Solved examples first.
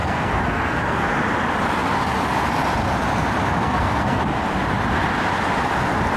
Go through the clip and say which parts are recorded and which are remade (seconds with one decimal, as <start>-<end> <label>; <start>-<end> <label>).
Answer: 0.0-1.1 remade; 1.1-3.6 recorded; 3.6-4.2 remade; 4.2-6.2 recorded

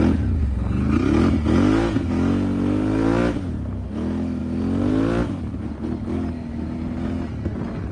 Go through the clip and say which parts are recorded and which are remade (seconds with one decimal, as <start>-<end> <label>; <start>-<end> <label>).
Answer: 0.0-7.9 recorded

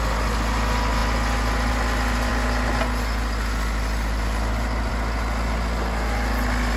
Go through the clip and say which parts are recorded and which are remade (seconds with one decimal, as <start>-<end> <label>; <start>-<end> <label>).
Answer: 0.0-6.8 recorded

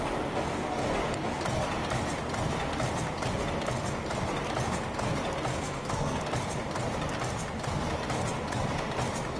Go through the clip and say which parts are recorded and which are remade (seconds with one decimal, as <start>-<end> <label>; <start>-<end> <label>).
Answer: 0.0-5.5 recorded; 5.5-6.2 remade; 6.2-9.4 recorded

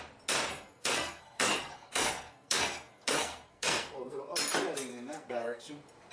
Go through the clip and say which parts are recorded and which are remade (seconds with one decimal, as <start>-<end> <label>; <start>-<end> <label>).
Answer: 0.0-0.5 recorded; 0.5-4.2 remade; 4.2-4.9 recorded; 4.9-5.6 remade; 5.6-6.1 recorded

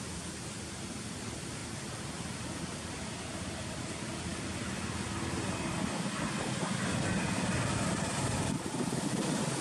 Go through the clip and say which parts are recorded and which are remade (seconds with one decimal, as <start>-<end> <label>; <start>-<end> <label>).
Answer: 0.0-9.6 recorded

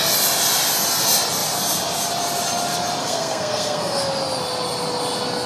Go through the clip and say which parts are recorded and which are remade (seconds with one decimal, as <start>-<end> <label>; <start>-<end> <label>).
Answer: 0.0-3.0 recorded; 3.0-4.0 remade; 4.0-5.5 recorded